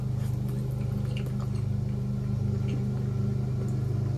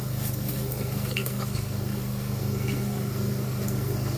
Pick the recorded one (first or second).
first